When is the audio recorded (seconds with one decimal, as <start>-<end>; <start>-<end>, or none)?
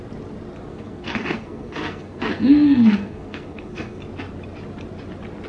0.0-0.7; 4.0-5.5